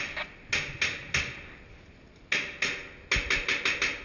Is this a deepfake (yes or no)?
no